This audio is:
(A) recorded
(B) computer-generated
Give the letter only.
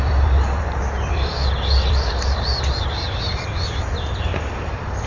B